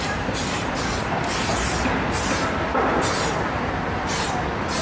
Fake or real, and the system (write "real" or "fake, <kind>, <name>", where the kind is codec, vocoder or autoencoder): real